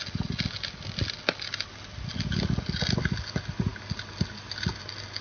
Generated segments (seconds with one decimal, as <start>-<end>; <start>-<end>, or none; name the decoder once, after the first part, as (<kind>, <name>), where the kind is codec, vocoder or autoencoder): none